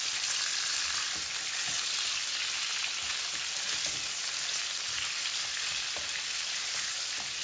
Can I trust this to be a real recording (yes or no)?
yes